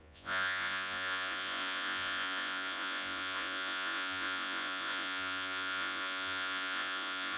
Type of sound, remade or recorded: remade